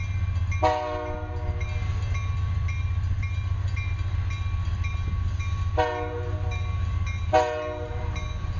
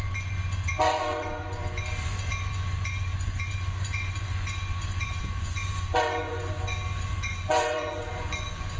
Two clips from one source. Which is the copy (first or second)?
second